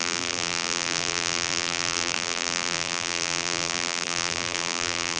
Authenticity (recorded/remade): remade